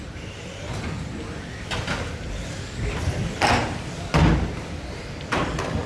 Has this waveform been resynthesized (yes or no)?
no